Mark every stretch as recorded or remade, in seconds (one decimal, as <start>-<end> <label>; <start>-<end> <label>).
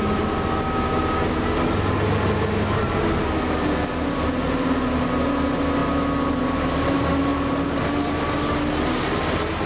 0.0-9.7 recorded